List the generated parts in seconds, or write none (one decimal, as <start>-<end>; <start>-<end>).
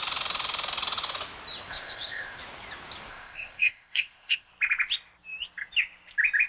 1.7-2.4; 3.1-4.5